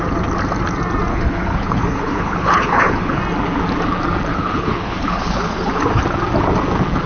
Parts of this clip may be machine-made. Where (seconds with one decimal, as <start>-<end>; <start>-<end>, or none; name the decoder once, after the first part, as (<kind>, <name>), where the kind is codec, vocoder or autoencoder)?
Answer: 1.1-3.2 (codec, HILCodec); 4.3-5.7